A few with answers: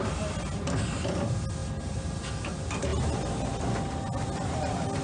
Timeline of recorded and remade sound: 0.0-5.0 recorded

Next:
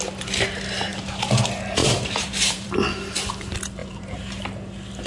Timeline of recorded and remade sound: 0.0-1.8 recorded; 1.8-3.3 remade; 3.3-3.8 recorded; 3.8-4.4 remade; 4.4-5.1 recorded

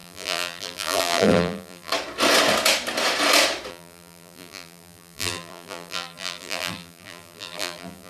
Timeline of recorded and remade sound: 0.0-1.9 remade; 1.9-3.7 recorded; 3.7-8.1 remade

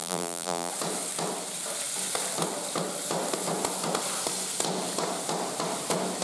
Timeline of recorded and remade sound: 0.0-0.7 remade; 0.7-6.2 recorded

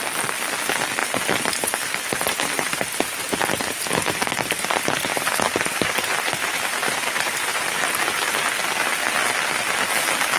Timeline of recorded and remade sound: 0.0-5.1 recorded; 5.1-7.8 remade; 7.8-10.4 recorded

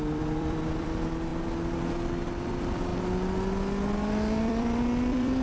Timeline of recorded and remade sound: 0.0-1.3 remade; 1.3-2.5 recorded; 2.5-2.9 remade; 2.9-4.4 recorded; 4.4-5.4 remade

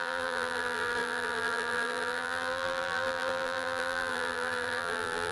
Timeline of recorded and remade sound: 0.0-5.3 remade